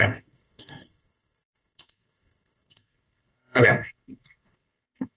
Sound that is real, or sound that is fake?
fake